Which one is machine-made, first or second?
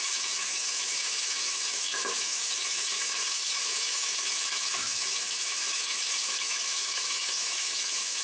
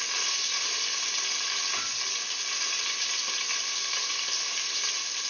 first